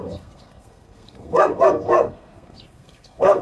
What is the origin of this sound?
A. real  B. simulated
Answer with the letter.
B